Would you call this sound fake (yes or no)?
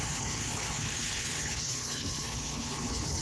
yes